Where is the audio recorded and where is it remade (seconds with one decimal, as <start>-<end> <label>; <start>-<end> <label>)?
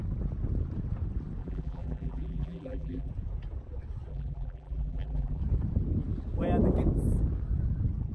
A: 0.0-1.4 recorded; 1.4-3.1 remade; 3.1-4.1 recorded; 4.1-5.4 remade; 5.4-8.1 recorded